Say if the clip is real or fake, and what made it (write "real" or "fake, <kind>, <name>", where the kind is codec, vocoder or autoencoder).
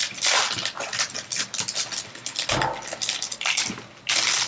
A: real